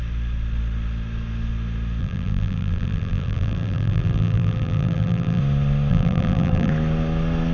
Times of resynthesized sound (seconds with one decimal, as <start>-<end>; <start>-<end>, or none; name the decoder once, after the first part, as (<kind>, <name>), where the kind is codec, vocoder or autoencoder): 2.0-5.4 (vocoder, BigVGAN v2); 5.9-6.7